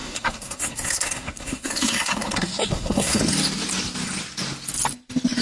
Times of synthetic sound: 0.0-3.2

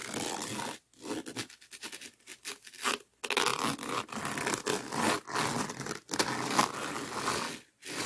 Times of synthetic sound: none

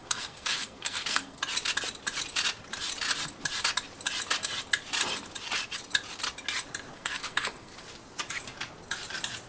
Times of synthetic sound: 0.0-1.4; 6.9-7.8

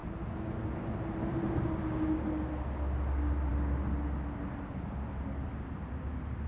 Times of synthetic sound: none

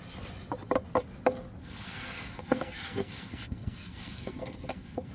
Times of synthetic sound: 1.6-5.1